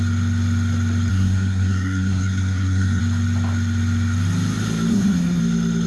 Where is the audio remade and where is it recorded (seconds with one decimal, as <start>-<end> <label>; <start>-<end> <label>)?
0.0-1.1 recorded; 1.1-3.0 remade; 3.0-4.9 recorded; 4.9-5.4 remade; 5.4-5.9 recorded